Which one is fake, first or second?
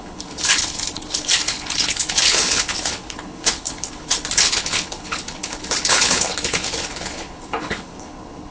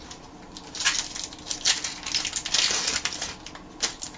first